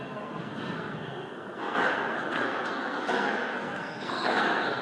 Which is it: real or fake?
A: fake